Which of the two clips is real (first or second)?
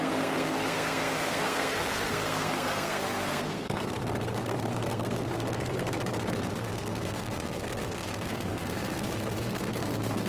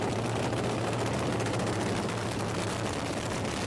second